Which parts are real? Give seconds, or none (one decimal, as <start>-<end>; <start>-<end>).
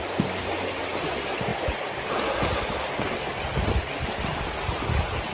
0.0-5.3